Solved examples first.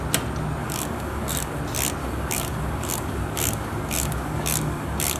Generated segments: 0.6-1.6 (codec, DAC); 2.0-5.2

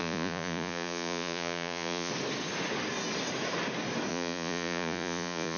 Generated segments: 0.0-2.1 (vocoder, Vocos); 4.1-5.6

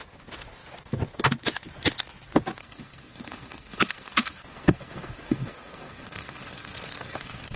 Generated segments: 2.6-7.6 (codec, SNAC)